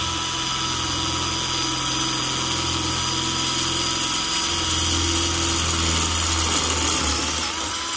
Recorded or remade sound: recorded